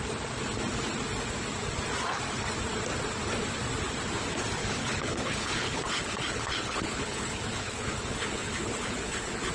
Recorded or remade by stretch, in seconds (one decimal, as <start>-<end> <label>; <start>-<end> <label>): 0.0-4.6 recorded; 4.6-9.5 remade